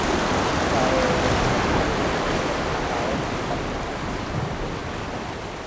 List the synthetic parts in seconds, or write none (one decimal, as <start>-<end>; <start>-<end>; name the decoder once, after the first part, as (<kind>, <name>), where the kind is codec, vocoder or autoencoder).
none